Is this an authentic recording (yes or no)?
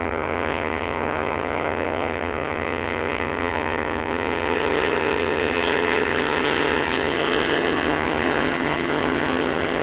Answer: no